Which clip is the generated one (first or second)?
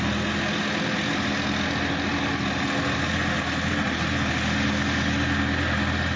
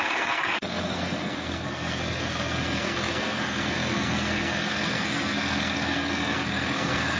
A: second